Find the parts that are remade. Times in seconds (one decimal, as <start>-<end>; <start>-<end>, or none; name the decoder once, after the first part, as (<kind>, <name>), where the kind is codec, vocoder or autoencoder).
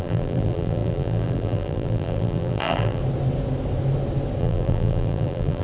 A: 0.0-3.0 (vocoder, BigVGAN v2); 4.4-5.6